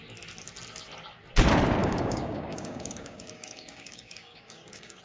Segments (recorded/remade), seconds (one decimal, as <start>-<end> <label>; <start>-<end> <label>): 0.0-1.8 recorded; 1.8-5.0 remade